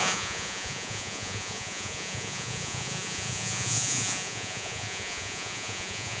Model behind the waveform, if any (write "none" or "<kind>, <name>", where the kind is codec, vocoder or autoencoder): vocoder, Vocos